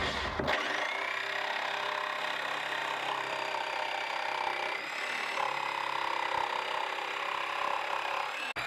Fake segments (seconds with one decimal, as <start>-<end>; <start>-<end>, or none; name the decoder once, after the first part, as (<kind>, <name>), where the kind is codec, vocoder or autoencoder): 2.8-7.8 (vocoder, BigVGAN v2)

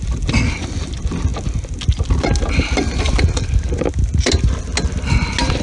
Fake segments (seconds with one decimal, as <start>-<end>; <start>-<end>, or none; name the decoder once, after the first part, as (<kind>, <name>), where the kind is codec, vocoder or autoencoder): none

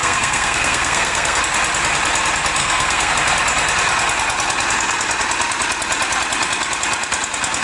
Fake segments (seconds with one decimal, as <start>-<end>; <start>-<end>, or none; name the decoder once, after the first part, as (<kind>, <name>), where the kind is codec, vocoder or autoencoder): 0.0-1.4 (codec, SNAC); 2.6-3.1

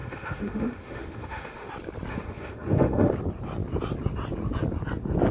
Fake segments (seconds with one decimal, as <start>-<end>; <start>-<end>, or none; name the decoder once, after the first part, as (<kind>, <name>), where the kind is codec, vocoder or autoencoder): 0.0-1.7 (autoencoder, DAC-VAE); 2.1-3.1

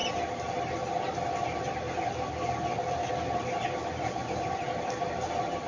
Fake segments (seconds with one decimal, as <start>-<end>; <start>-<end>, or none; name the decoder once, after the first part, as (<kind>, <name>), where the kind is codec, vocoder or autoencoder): none

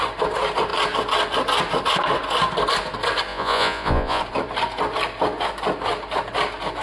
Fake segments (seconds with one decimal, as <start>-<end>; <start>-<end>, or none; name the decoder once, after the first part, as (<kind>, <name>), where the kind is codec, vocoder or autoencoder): 3.3-4.2 (vocoder, Vocos)